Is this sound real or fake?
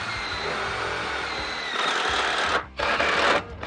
real